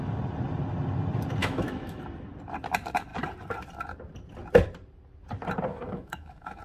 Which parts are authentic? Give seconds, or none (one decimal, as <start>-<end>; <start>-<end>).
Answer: 0.0-1.4; 2.0-5.7